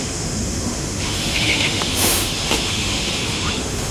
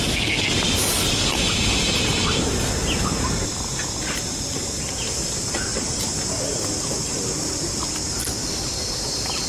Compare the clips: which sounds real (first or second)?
second